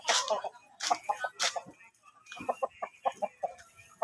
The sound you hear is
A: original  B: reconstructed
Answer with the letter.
A